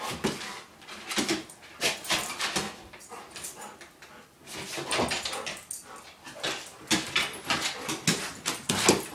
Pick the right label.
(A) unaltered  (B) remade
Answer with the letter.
A